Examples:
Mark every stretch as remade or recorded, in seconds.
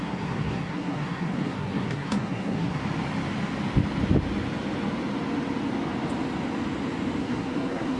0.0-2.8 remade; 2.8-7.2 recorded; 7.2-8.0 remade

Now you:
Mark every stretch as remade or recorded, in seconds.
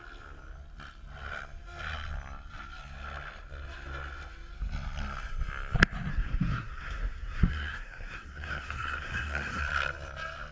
0.0-6.1 recorded; 6.1-9.6 remade; 9.6-10.5 recorded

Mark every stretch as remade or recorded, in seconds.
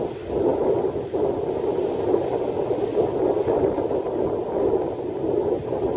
0.0-6.0 recorded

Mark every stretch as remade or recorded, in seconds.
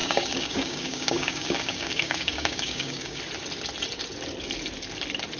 0.0-3.2 remade; 3.2-5.4 recorded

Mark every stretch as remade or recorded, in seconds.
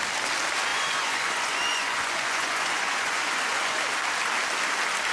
0.0-0.7 recorded; 0.7-3.8 remade; 3.8-5.1 recorded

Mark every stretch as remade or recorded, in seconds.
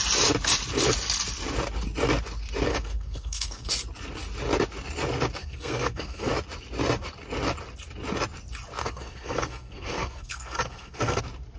0.0-2.7 recorded; 2.7-3.7 remade; 3.7-5.4 recorded; 5.4-6.3 remade; 6.3-8.8 recorded; 8.8-11.2 remade; 11.2-11.6 recorded